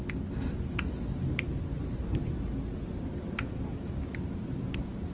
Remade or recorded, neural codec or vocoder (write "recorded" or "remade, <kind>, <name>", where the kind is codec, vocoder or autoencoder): recorded